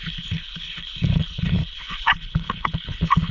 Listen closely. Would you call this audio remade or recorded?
remade